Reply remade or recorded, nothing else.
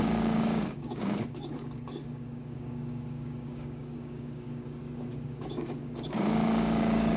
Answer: remade